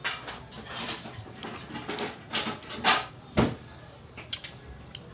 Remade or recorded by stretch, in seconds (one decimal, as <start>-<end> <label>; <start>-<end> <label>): 0.0-5.1 recorded